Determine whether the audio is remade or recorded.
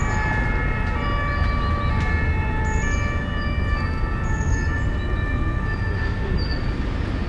recorded